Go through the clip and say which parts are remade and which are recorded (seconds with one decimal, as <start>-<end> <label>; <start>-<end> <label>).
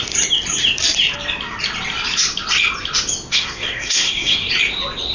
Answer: 0.0-3.3 recorded; 3.3-4.5 remade; 4.5-5.1 recorded